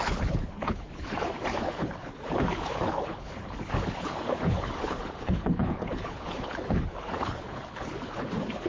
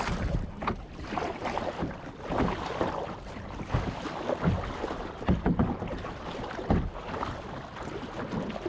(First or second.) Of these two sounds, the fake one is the first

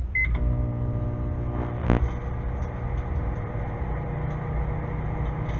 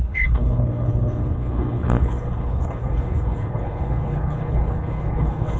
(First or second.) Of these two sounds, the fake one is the second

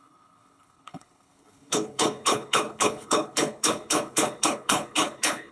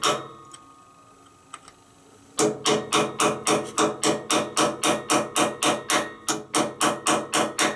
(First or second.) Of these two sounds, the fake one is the first